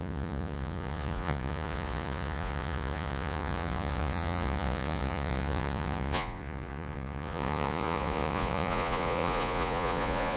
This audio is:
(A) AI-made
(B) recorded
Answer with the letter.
A